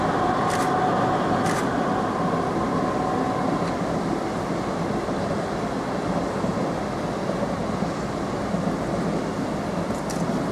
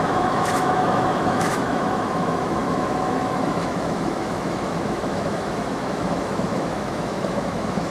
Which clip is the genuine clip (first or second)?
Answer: first